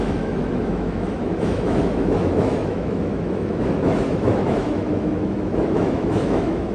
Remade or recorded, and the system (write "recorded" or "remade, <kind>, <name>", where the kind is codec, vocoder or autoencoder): remade, autoencoder, DAC-VAE